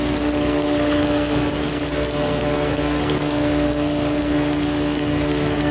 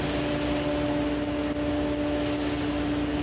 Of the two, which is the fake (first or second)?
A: first